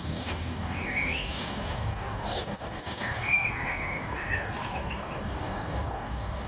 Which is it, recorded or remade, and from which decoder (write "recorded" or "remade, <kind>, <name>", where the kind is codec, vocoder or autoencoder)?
remade, codec, DAC